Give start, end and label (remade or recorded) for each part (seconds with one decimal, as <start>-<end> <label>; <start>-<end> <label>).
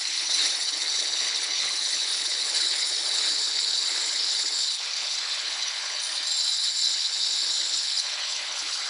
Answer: 0.0-6.0 remade; 6.0-6.5 recorded; 6.5-8.9 remade